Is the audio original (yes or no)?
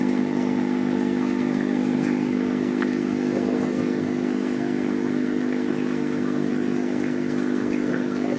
no